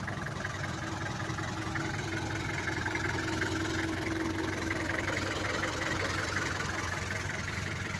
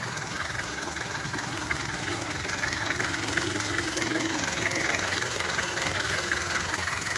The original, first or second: first